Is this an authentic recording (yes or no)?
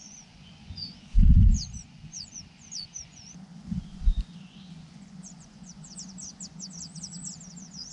no